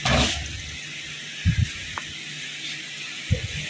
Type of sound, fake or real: real